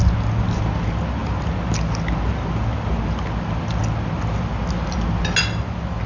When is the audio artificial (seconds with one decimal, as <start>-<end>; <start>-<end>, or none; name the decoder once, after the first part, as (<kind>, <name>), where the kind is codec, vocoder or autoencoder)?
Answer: none